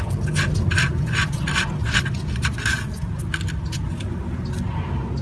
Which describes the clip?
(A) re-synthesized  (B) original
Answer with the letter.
B